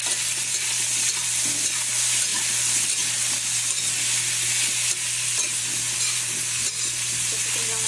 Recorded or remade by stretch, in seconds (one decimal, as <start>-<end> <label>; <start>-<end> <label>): 0.0-7.9 recorded